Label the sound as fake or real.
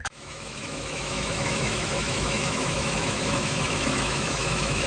fake